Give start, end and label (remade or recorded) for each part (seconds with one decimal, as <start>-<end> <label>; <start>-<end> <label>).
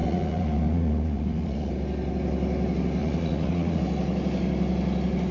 0.0-1.7 remade; 1.7-3.0 recorded; 3.0-3.8 remade; 3.8-5.3 recorded